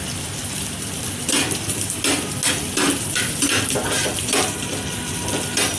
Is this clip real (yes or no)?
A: yes